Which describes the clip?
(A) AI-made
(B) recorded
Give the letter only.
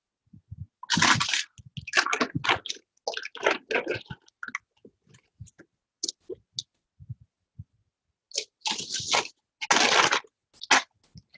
B